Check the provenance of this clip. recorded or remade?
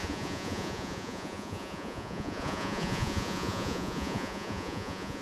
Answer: remade